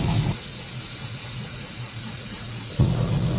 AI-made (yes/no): yes